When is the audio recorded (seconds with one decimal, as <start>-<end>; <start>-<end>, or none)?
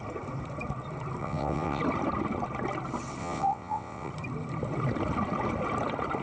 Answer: 0.0-1.2; 1.8-3.2; 4.1-6.2